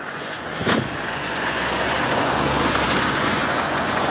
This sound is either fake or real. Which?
fake